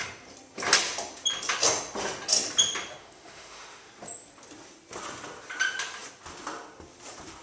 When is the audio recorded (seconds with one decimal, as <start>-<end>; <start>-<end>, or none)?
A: 0.0-3.0; 3.9-7.4